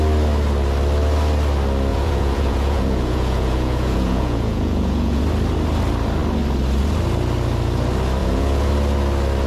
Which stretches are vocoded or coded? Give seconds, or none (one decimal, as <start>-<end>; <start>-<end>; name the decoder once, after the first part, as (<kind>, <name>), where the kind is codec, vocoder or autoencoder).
1.9-5.2 (vocoder, Vocos); 8.2-8.7